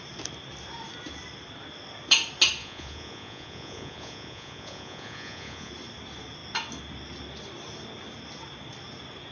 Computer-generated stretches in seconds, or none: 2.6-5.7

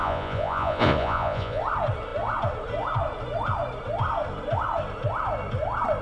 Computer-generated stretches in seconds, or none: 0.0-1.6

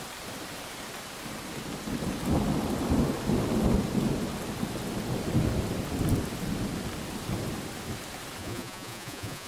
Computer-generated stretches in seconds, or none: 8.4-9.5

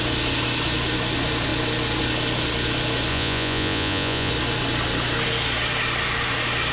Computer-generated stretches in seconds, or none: 3.1-4.3

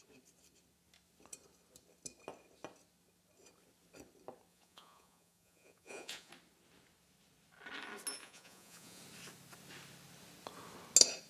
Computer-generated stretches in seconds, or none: 4.5-6.3; 8.2-9.0

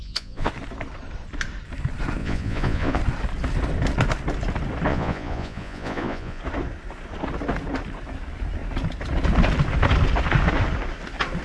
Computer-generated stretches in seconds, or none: 0.0-0.5; 2.2-3.0; 4.9-6.4